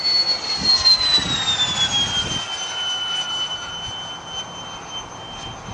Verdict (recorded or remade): recorded